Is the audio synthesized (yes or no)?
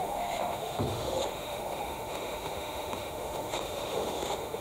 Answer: yes